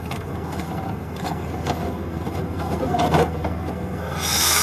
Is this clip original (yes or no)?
no